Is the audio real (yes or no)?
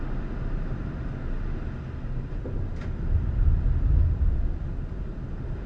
yes